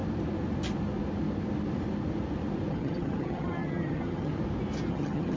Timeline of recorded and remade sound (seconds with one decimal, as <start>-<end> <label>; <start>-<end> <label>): 0.0-2.7 recorded; 2.7-4.3 remade; 4.3-4.9 recorded; 4.9-5.4 remade